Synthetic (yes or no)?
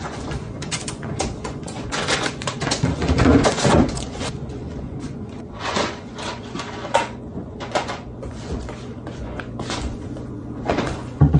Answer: yes